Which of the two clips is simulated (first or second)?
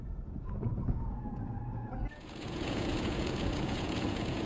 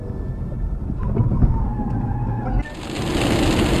first